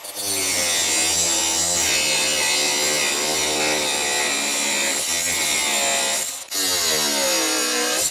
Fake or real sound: real